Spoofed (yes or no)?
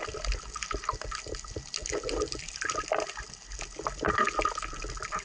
no